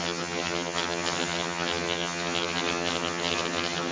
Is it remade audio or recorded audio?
remade